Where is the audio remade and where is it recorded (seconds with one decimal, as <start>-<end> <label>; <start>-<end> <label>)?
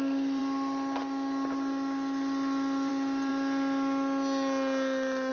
0.0-5.3 recorded